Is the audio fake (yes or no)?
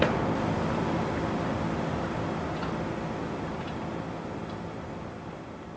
no